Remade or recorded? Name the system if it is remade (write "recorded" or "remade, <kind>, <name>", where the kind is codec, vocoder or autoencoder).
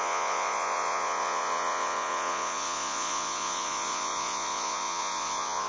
remade, vocoder, Vocos